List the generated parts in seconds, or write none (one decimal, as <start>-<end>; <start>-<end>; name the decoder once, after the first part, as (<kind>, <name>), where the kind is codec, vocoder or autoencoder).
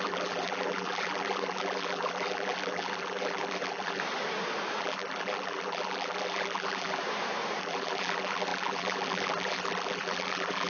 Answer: 0.0-4.0 (vocoder, BigVGAN v2); 4.8-7.0; 7.6-10.7